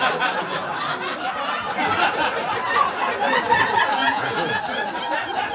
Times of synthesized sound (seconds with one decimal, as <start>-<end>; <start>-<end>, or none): 4.0-4.6